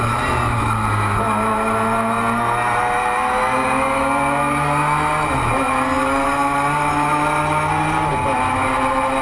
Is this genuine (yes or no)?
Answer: yes